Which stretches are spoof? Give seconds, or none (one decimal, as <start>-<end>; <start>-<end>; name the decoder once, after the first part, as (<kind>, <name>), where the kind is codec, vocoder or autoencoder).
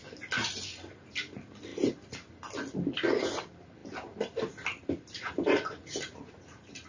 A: 1.7-3.4 (vocoder, BigVGAN v2); 3.8-6.9